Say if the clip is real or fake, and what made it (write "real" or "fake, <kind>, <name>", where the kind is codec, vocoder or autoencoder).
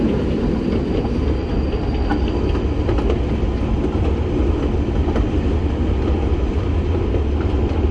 real